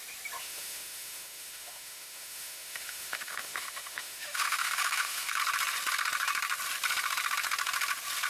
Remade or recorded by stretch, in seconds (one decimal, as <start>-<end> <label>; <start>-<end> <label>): 0.0-0.4 recorded; 0.4-5.4 remade; 5.4-8.3 recorded

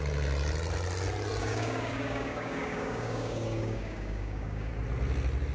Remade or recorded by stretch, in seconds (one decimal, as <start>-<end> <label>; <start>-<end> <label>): 0.0-1.4 recorded; 1.4-4.7 remade; 4.7-5.5 recorded

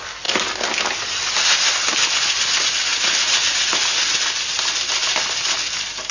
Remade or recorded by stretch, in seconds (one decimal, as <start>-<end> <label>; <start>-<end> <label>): 0.0-6.1 recorded

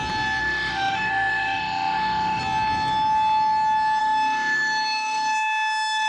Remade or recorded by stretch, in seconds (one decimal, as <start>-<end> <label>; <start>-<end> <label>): 0.0-0.4 recorded; 0.4-2.4 remade; 2.4-4.0 recorded; 4.0-6.1 remade

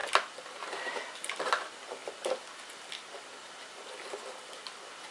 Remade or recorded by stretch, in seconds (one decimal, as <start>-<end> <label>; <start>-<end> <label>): 0.0-0.9 remade; 0.9-5.1 recorded

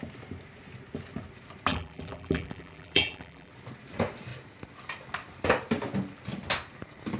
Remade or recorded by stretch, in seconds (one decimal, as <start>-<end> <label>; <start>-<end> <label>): 0.0-1.7 recorded; 1.7-3.5 remade; 3.5-7.2 recorded

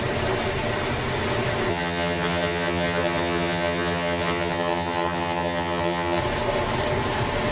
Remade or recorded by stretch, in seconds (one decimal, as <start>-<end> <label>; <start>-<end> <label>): 0.0-1.7 recorded; 1.7-6.2 remade; 6.2-7.5 recorded